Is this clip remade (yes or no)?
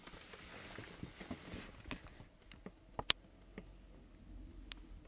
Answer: no